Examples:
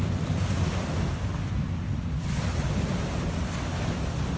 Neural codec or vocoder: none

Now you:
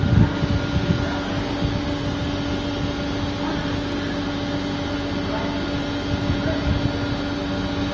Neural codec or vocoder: none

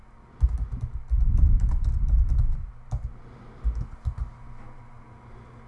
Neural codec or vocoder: none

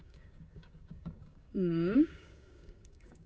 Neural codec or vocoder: codec, DAC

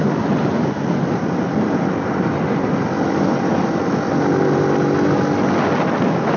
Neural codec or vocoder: none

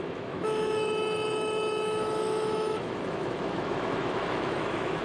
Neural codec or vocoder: autoencoder, DAC-VAE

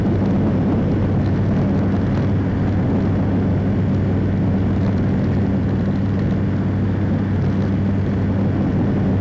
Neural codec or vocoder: none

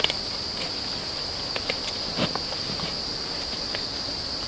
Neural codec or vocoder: none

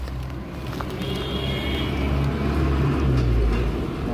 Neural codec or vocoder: none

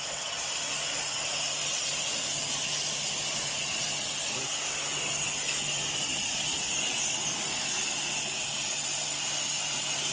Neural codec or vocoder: none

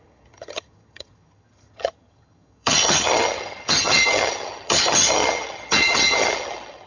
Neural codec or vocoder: vocoder, HiFi-GAN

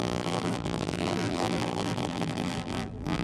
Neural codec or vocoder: vocoder, BigVGAN v2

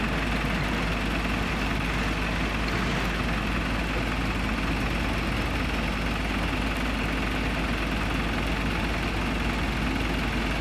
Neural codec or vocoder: none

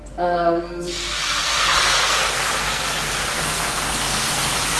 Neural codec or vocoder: codec, SNAC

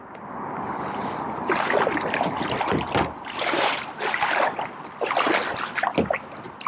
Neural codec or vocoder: none